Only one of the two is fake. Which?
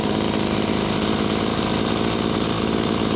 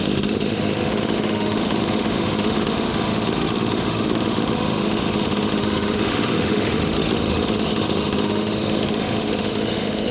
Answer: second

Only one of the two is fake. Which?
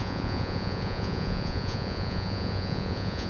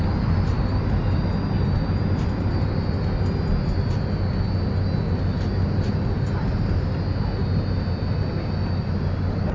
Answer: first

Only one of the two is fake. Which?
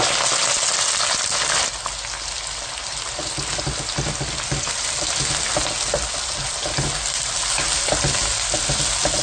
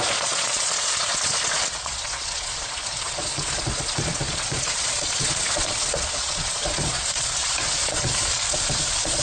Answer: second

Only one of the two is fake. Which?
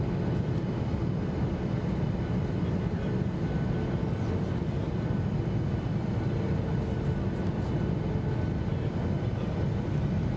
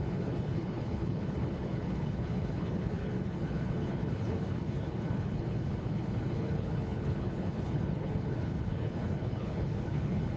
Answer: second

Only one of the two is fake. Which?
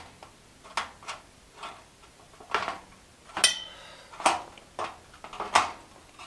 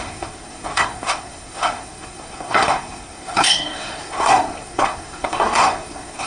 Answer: second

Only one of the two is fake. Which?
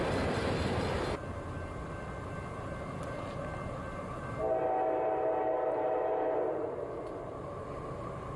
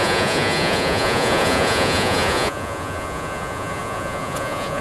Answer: second